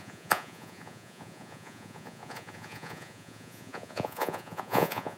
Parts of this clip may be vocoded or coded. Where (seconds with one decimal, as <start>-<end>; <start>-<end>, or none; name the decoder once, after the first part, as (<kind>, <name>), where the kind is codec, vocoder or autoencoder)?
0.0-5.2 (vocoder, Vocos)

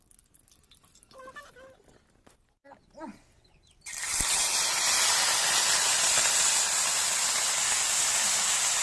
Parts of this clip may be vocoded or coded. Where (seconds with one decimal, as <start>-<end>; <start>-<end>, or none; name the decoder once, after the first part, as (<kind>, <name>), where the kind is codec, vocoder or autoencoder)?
none

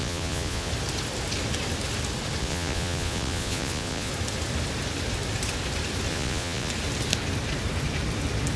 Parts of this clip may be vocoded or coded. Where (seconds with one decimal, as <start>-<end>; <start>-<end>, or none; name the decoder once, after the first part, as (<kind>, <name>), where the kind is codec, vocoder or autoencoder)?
0.0-0.7 (vocoder, Vocos); 2.4-4.1; 6.1-6.7

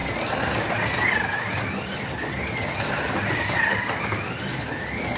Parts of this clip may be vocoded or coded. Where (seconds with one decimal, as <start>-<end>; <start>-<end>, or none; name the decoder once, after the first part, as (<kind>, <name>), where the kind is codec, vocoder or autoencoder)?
none